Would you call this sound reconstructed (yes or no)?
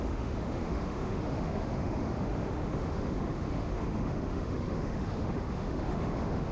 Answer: yes